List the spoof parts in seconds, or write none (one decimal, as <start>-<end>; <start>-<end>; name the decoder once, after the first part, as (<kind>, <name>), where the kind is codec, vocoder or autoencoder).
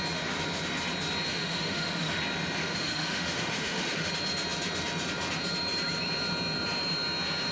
1.3-2.2 (autoencoder, DAC-VAE); 2.6-4.1